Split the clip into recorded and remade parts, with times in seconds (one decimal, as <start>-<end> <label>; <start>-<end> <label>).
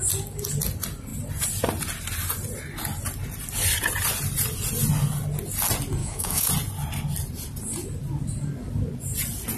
0.0-6.0 recorded; 6.0-6.5 remade; 6.5-9.6 recorded